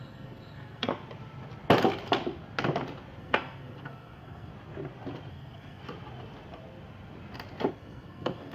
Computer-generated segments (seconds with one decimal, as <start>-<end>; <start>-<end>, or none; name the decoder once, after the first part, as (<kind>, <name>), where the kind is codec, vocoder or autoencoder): 0.0-0.9 (codec, SNAC); 3.2-4.5; 5.3-5.8; 7.7-8.5